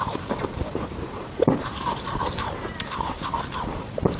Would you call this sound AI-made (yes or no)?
yes